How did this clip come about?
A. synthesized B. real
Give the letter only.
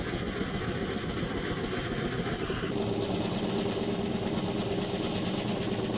B